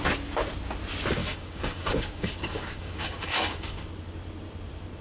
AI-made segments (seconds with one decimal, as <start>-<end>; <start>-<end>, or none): 1.2-3.9